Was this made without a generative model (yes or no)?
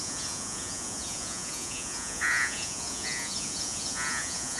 no